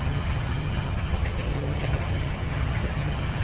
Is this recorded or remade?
remade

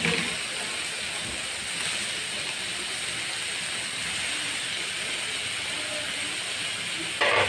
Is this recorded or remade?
recorded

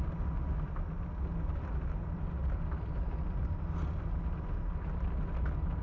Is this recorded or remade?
recorded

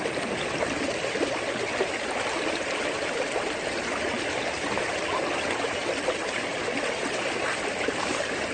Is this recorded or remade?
recorded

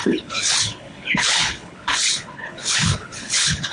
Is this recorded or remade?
remade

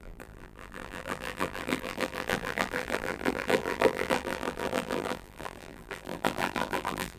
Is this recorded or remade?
remade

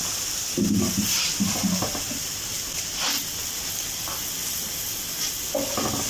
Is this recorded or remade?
recorded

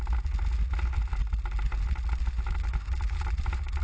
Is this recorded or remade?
recorded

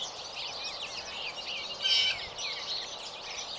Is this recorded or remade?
recorded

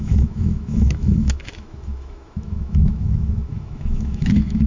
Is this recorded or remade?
remade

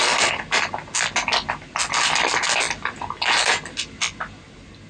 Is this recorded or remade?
recorded